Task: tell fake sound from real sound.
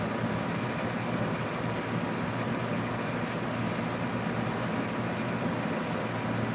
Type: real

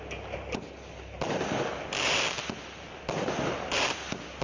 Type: real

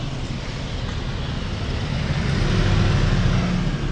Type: real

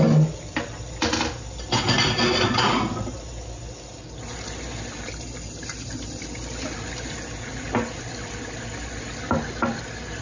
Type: real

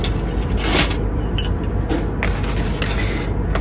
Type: real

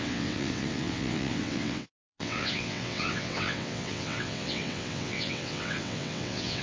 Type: fake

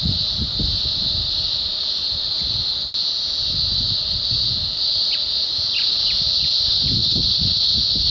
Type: real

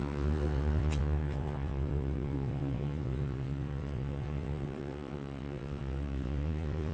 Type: fake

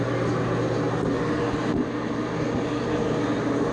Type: real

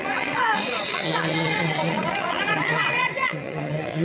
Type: fake